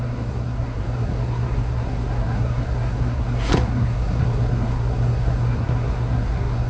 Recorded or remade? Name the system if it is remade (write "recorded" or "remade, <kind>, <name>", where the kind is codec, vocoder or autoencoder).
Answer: remade, codec, SNAC